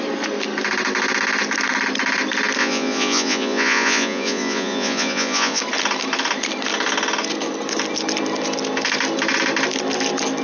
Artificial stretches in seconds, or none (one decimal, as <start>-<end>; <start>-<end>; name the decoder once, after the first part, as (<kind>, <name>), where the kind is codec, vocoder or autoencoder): 2.6-5.6 (vocoder, Vocos)